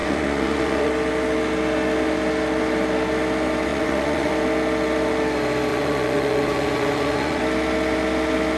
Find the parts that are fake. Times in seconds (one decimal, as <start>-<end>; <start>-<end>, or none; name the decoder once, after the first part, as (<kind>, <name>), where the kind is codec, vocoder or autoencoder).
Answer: 0.0-0.9 (vocoder, Vocos); 3.7-4.3; 5.7-7.4